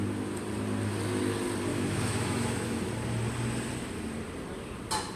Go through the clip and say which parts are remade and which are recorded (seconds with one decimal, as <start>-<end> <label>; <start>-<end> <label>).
0.0-1.7 recorded; 1.7-2.9 remade; 2.9-5.2 recorded